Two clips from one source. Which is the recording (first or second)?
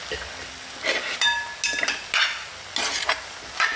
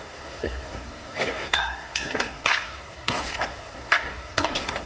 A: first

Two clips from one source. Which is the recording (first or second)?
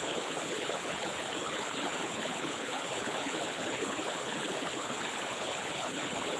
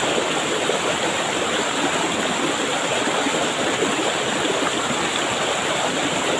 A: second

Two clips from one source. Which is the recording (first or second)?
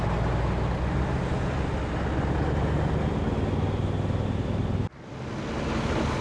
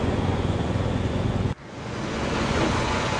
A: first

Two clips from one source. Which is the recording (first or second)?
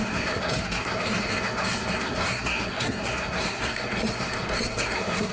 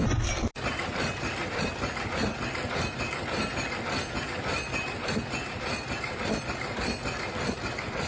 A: second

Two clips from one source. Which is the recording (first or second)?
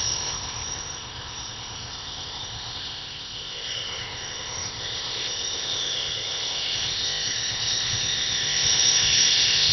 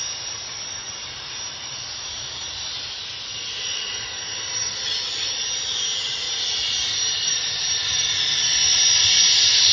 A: second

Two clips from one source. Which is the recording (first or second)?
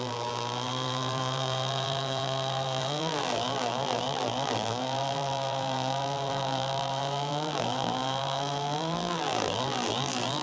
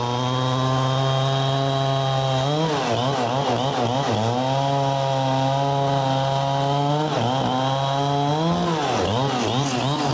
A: second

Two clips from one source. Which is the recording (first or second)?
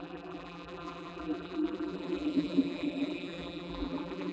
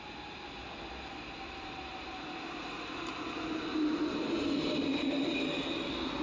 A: second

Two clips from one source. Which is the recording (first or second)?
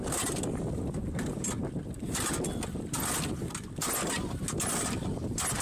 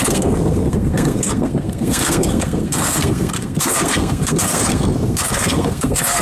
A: first